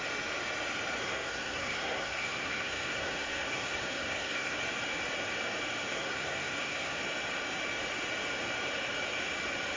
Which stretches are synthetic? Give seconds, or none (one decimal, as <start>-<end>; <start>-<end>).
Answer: 1.0-4.6; 5.9-7.0